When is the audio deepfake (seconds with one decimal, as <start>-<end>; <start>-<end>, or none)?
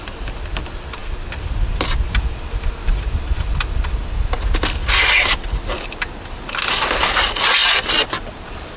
none